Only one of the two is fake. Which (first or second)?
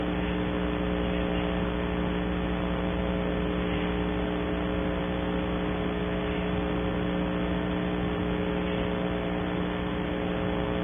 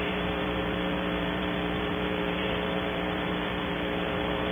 second